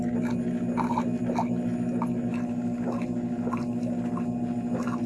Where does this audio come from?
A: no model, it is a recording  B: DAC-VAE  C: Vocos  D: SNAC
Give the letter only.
A